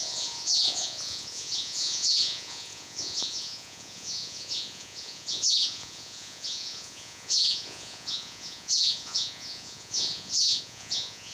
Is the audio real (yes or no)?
no